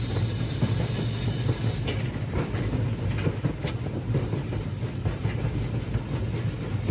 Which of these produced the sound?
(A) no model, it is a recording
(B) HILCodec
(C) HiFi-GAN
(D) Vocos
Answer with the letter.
A